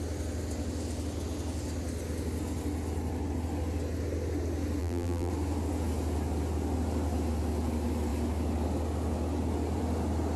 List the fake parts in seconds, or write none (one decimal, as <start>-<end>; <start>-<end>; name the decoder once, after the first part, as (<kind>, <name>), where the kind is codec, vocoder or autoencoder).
4.8-5.3 (vocoder, BigVGAN v2)